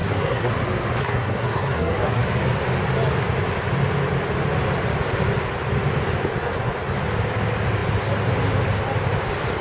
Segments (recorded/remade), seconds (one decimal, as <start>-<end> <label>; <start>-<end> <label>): 0.0-0.5 remade; 0.5-1.0 recorded; 1.0-2.2 remade; 2.2-9.6 recorded